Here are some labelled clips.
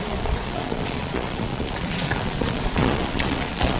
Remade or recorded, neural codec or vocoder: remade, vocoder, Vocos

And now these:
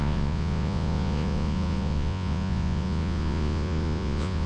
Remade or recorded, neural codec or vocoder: remade, vocoder, Vocos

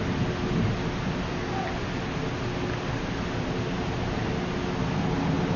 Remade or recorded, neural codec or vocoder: recorded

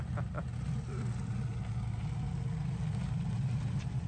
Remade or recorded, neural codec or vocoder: recorded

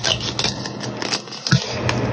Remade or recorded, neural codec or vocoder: recorded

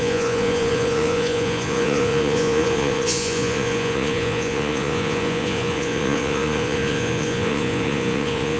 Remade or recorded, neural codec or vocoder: remade, vocoder, Vocos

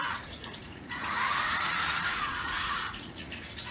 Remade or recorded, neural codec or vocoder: remade, vocoder, Vocos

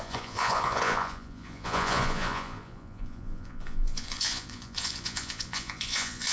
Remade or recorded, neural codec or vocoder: remade, vocoder, Vocos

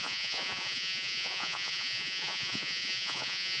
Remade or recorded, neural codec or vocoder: remade, vocoder, Vocos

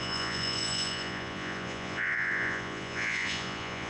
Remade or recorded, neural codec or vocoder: remade, vocoder, Vocos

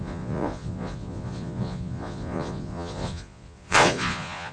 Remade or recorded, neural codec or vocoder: remade, vocoder, Vocos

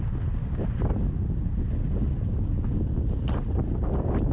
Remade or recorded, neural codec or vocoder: recorded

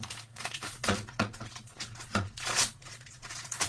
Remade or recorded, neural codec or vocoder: remade, vocoder, Vocos